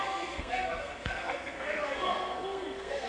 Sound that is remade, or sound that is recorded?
remade